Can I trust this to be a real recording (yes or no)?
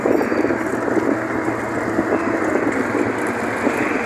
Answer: yes